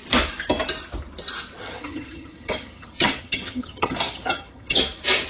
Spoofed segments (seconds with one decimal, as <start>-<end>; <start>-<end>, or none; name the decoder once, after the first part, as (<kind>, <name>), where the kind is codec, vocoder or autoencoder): 1.6-4.8 (vocoder, HiFi-GAN)